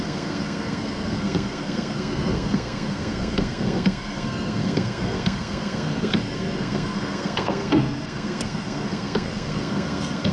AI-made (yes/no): yes